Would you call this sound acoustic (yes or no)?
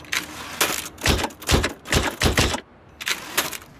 yes